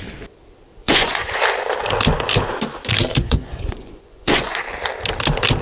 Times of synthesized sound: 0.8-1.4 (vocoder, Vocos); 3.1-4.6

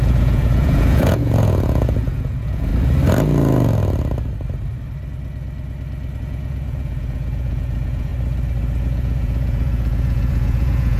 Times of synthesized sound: 0.0-2.7 (vocoder, Vocos); 6.2-8.1; 8.8-11.0